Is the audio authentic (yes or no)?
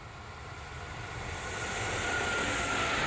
yes